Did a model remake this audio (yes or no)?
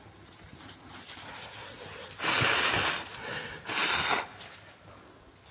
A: no